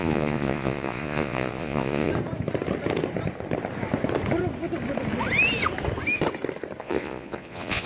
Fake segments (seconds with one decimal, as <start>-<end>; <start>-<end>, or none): 0.0-2.1; 6.8-7.9